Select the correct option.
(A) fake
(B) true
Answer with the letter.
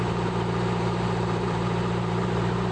A